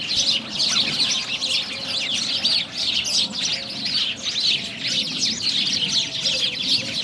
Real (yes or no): yes